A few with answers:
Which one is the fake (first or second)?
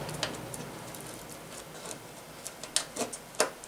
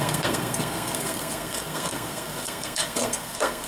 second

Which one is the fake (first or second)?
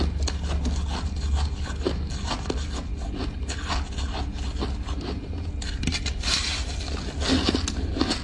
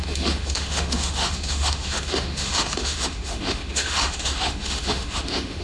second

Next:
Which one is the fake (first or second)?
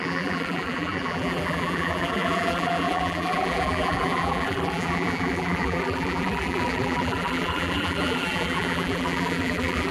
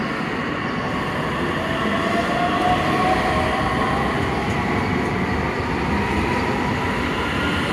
first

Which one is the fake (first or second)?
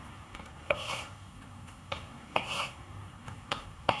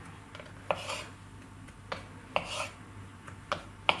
first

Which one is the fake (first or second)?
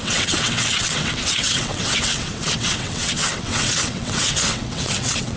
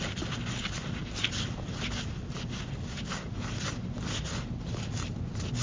first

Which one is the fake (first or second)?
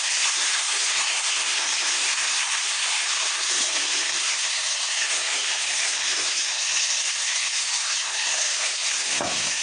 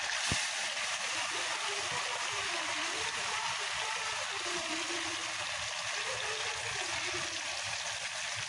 first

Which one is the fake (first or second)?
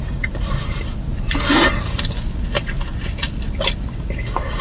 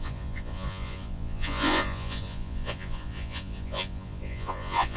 second